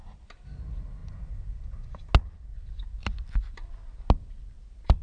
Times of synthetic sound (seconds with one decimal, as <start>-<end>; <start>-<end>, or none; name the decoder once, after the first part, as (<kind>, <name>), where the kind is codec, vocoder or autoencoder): none